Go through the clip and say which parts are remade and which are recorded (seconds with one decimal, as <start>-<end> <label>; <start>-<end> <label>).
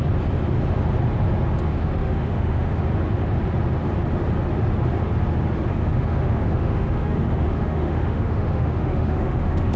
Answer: 0.0-1.7 recorded; 1.7-2.8 remade; 2.8-5.7 recorded; 5.7-9.8 remade